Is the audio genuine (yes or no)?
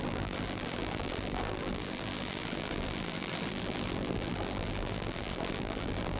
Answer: no